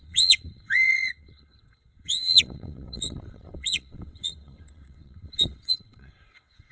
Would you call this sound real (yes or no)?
no